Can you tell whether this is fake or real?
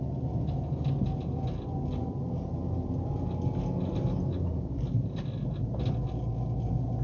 real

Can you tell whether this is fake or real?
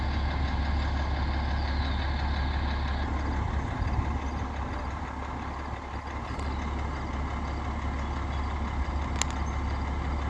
real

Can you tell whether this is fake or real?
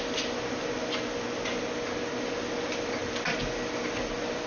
real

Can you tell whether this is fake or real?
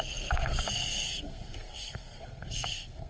fake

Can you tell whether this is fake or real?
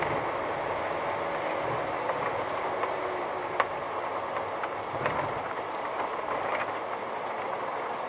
real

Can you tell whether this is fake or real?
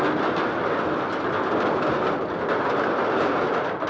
real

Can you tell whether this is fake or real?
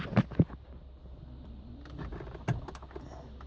fake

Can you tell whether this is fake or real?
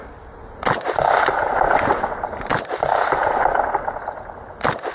real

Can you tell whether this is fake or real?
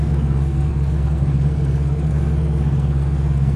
fake